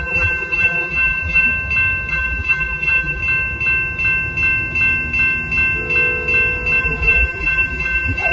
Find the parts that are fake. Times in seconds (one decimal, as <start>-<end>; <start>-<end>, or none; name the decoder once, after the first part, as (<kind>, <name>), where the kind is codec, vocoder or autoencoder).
0.0-1.5 (vocoder, BigVGAN v2); 2.1-3.2; 6.8-8.3